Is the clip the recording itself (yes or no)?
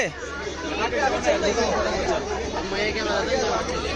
no